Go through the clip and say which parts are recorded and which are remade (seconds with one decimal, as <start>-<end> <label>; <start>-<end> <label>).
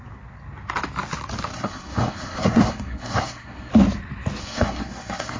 0.0-1.5 recorded; 1.5-3.7 remade; 3.7-4.4 recorded; 4.4-5.4 remade